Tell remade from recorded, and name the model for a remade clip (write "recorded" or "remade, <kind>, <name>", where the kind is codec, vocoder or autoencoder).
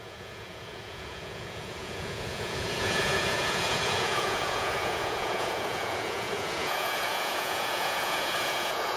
remade, vocoder, Vocos